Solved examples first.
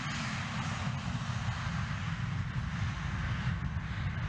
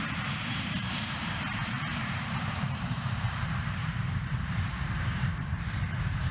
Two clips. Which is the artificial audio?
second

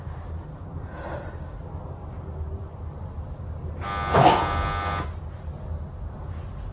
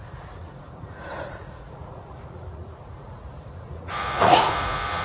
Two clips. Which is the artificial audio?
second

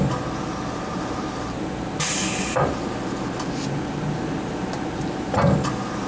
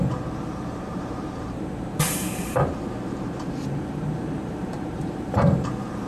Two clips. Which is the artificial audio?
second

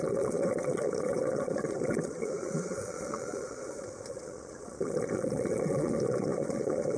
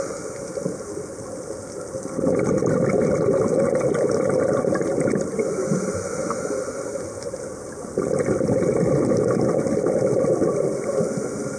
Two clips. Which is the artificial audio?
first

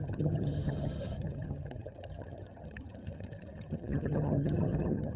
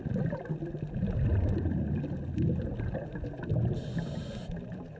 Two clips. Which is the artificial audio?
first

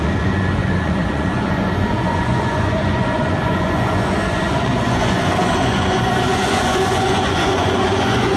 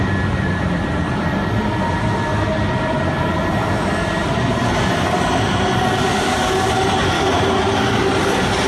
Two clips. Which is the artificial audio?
first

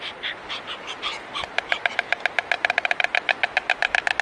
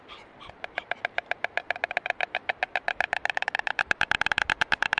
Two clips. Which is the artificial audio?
second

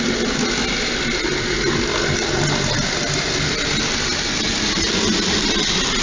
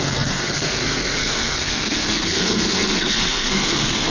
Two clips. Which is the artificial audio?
second